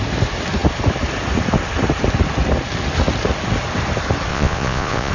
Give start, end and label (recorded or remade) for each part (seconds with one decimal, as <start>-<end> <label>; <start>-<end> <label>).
0.0-4.3 recorded; 4.3-5.1 remade